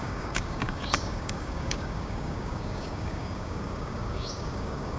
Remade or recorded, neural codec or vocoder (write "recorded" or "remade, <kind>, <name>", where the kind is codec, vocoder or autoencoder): remade, codec, DAC